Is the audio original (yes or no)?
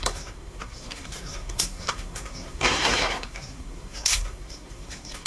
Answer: no